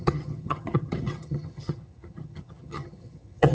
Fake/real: fake